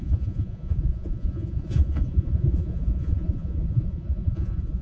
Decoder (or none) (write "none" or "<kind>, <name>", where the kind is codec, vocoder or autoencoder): vocoder, Vocos